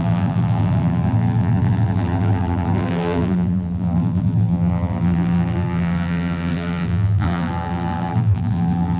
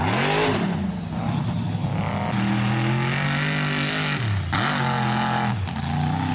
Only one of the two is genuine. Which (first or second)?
second